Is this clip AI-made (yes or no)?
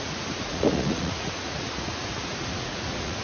yes